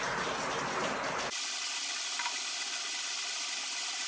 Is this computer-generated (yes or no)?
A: no